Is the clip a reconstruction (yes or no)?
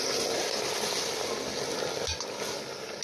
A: no